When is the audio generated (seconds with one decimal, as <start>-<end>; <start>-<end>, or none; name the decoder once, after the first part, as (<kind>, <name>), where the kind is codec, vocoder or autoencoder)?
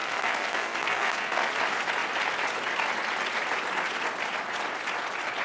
0.0-1.5 (codec, SNAC)